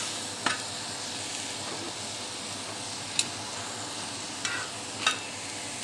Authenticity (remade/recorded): recorded